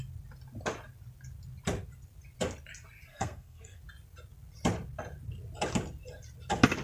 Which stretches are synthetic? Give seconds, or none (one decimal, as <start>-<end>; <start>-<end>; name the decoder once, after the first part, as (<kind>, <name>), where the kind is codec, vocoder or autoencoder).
3.1-3.8 (codec, SNAC)